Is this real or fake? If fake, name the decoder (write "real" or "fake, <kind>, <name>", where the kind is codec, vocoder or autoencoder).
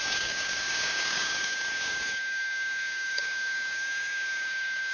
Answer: fake, codec, DAC